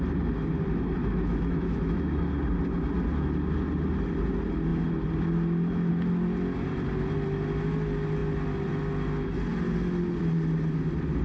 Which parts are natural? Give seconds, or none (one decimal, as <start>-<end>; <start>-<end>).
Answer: 0.0-1.0; 2.2-11.2